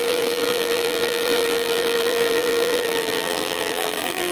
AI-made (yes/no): yes